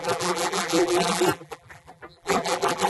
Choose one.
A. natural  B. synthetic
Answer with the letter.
B